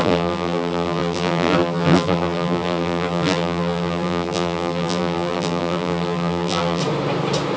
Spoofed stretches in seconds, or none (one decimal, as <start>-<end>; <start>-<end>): 0.0-6.8